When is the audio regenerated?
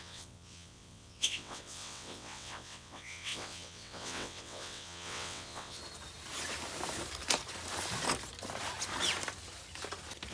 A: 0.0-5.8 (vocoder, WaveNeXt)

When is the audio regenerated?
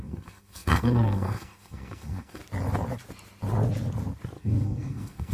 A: 0.0-2.4 (codec, SNAC); 4.4-5.3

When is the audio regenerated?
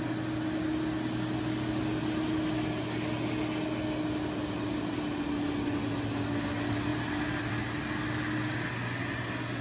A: 6.9-7.5 (vocoder, BigVGAN v2)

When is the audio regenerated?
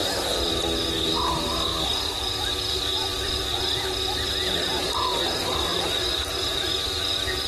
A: 0.0-0.5 (vocoder, BigVGAN v2); 1.7-2.5; 3.1-4.3; 5.7-6.7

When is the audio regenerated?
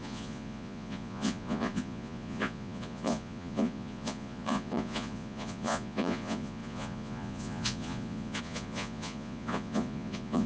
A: 0.0-10.5 (vocoder, Vocos)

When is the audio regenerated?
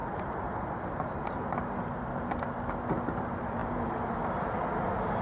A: 3.0-3.6 (vocoder, BigVGAN v2)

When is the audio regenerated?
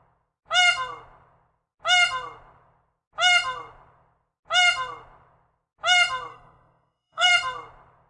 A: 6.3-7.3 (codec, SNAC)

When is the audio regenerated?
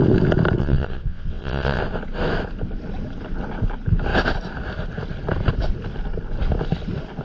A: 0.6-1.8 (vocoder, WaveNeXt)